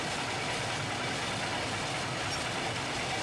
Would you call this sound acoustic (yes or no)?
yes